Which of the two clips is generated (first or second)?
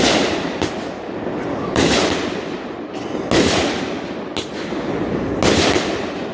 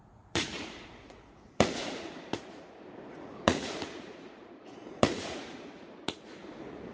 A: second